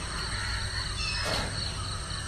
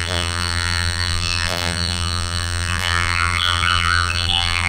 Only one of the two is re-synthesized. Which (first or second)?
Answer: second